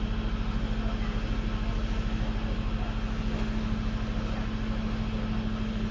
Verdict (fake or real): real